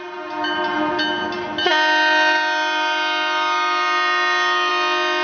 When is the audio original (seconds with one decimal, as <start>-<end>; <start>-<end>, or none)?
0.0-5.2

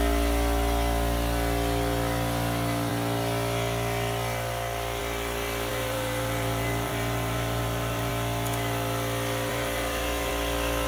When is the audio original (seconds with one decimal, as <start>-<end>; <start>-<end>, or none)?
0.0-5.7; 8.1-9.5; 10.3-10.9

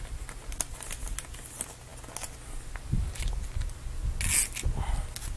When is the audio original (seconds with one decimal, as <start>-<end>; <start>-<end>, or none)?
0.0-5.4

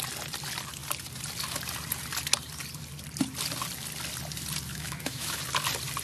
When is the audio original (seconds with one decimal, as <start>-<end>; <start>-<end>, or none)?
0.0-4.7; 5.4-6.0

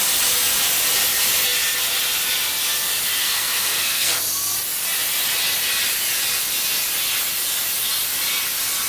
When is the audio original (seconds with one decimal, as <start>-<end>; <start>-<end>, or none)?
0.0-3.2; 4.2-8.9